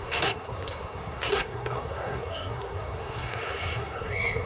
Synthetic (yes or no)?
yes